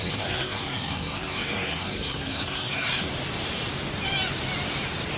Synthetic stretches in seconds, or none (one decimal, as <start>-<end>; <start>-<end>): 0.0-3.1